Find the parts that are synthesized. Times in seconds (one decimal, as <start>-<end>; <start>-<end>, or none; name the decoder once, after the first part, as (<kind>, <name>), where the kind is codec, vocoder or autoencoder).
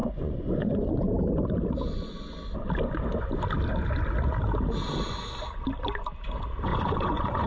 0.0-1.0 (vocoder, Vocos); 6.7-7.5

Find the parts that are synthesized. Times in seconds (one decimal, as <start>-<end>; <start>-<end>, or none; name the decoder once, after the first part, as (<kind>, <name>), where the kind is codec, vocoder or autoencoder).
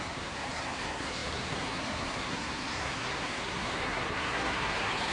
0.0-5.1 (codec, SNAC)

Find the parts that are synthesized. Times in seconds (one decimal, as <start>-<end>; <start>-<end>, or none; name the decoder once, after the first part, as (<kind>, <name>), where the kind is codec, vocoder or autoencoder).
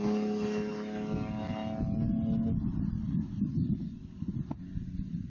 none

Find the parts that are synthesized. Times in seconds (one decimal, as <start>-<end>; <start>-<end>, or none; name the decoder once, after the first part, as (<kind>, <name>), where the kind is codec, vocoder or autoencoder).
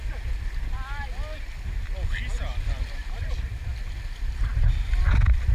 none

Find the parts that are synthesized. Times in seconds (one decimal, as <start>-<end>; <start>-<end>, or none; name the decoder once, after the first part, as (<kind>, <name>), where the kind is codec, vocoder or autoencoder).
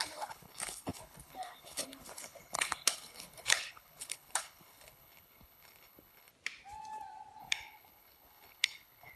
0.0-6.3 (codec, HILCodec); 7.4-9.2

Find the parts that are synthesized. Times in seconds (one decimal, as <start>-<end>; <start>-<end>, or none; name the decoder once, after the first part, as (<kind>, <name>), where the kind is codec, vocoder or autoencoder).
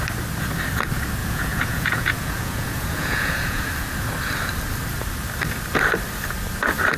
1.2-3.6 (vocoder, Vocos)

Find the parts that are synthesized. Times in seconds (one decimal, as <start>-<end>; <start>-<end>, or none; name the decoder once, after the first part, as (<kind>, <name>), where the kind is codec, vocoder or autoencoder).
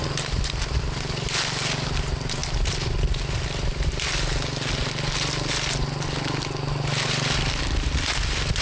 none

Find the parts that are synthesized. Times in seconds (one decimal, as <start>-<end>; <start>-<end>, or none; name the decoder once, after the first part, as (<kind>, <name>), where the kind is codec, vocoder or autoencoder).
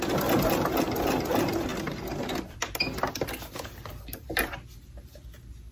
none